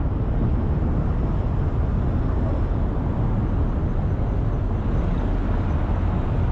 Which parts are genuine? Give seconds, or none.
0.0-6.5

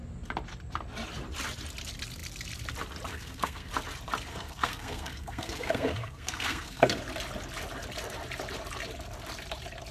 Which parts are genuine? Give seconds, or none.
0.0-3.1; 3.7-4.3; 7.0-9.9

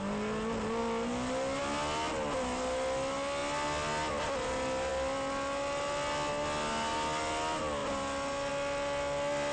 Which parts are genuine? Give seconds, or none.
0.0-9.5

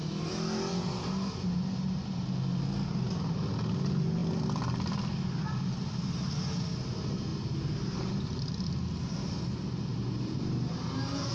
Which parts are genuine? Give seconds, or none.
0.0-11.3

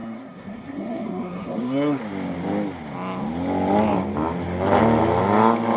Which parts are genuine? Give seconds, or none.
2.0-5.8

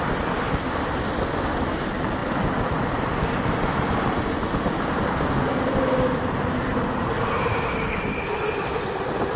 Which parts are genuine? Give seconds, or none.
0.0-9.4

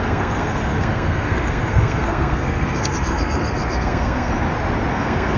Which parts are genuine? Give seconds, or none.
4.3-4.9